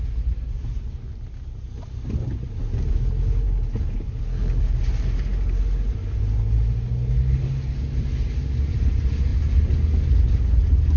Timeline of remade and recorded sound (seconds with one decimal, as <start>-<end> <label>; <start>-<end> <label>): 0.0-11.0 recorded